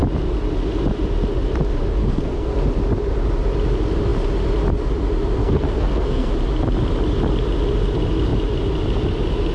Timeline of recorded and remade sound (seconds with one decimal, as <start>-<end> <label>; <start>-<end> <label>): 0.0-2.0 recorded; 2.0-2.5 remade; 2.5-5.4 recorded; 5.4-6.3 remade; 6.3-9.5 recorded